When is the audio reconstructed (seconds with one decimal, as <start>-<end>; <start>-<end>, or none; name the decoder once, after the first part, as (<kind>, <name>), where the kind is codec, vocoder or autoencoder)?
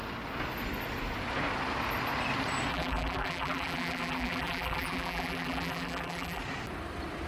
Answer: 2.7-6.4 (vocoder, BigVGAN v2)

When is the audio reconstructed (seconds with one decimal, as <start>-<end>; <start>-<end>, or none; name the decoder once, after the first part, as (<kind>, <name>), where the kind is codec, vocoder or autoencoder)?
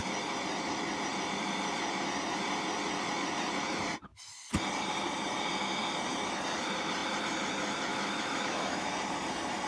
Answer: 7.9-8.9 (autoencoder, DAC-VAE)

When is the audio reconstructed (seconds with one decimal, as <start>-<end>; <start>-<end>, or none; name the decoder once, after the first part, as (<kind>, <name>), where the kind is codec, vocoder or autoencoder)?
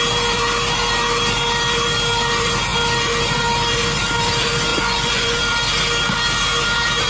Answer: 4.7-5.4 (vocoder, Vocos)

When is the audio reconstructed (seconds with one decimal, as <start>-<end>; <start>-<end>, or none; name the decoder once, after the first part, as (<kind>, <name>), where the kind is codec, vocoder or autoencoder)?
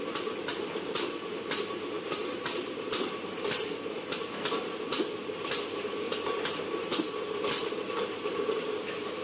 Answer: none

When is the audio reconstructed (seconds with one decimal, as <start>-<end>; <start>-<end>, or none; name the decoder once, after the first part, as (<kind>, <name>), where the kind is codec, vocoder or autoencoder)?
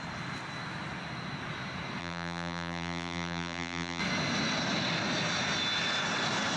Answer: 2.0-4.0 (vocoder, BigVGAN v2)